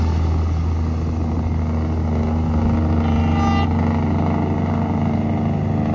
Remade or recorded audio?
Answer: recorded